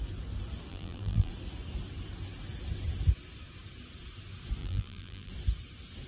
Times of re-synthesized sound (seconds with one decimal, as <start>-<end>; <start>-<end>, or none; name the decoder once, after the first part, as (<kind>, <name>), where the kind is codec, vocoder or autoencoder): 0.7-1.3 (vocoder, BigVGAN v2); 4.6-5.3